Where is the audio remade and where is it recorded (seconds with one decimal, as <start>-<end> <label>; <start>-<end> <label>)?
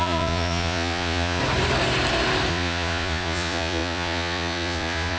0.0-1.4 remade; 1.4-2.5 recorded; 2.5-5.2 remade